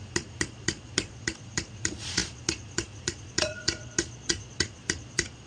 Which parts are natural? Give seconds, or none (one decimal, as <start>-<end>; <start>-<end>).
none